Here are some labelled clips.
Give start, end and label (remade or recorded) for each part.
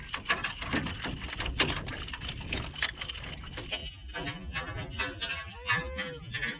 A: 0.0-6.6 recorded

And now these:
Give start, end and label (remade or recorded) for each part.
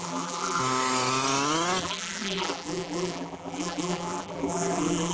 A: 0.0-0.6 remade; 0.6-1.8 recorded; 1.8-5.1 remade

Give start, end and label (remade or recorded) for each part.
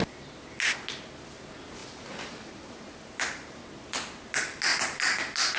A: 0.0-1.8 recorded; 1.8-3.6 remade; 3.6-5.6 recorded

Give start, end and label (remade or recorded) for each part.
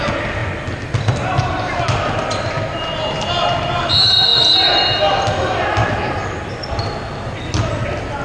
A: 0.0-8.2 recorded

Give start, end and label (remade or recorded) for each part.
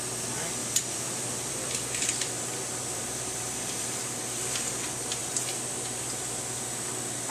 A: 0.0-0.6 recorded; 0.6-4.0 remade; 4.0-7.3 recorded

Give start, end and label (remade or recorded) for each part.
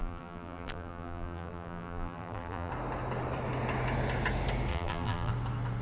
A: 0.0-2.7 remade; 2.7-4.7 recorded; 4.7-5.3 remade; 5.3-5.8 recorded